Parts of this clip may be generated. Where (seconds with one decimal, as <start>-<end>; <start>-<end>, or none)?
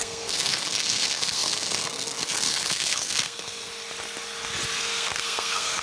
0.0-3.7; 4.7-5.8